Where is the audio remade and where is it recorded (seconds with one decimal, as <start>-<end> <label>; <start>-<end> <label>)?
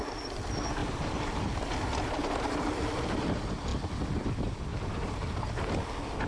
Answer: 0.0-0.8 recorded; 0.8-1.4 remade; 1.4-4.7 recorded; 4.7-5.4 remade; 5.4-6.3 recorded